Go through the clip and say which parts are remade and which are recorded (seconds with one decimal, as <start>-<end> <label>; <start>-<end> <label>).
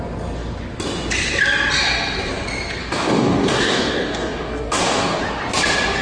0.0-2.8 recorded; 2.8-5.2 remade; 5.2-6.0 recorded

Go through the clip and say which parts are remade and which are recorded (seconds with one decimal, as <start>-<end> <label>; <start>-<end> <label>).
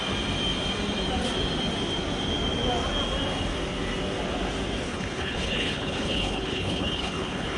0.0-4.9 recorded; 4.9-7.6 remade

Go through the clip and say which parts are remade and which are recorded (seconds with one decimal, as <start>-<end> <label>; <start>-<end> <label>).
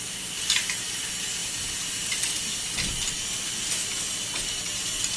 0.0-5.2 recorded